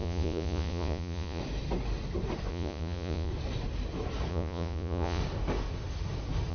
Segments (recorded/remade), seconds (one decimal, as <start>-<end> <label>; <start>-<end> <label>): 0.0-1.4 remade; 1.4-2.5 recorded; 2.5-3.3 remade; 3.3-4.3 recorded; 4.3-5.2 remade; 5.2-6.5 recorded